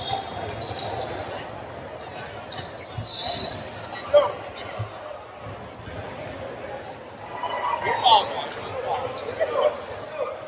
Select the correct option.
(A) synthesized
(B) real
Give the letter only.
B